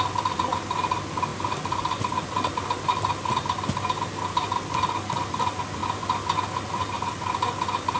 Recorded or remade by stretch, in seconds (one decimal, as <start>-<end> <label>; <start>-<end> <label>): 0.0-8.0 recorded